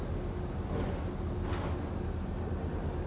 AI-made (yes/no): no